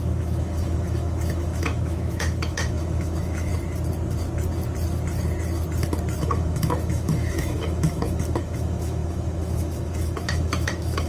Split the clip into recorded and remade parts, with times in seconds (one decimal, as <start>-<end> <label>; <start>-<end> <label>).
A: 0.0-3.5 remade; 3.5-6.2 recorded; 6.2-11.1 remade